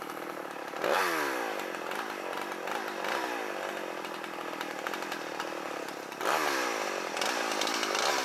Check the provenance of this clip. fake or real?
real